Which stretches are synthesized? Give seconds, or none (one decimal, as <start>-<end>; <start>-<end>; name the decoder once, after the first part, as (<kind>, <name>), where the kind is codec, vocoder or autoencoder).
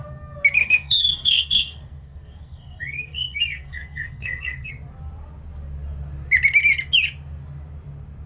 0.6-4.7 (codec, SNAC)